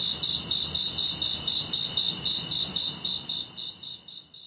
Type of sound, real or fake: real